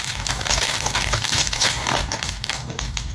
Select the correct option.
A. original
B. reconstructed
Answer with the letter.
B